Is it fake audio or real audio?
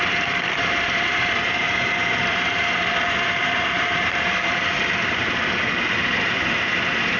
fake